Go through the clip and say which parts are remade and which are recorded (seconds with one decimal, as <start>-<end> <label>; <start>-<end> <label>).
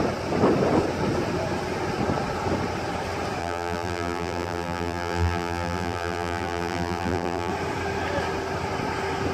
0.0-3.4 recorded; 3.4-7.5 remade; 7.5-9.3 recorded